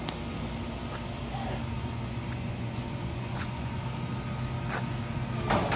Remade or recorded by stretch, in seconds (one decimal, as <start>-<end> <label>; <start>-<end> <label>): 0.0-1.7 recorded; 1.7-3.8 remade; 3.8-5.8 recorded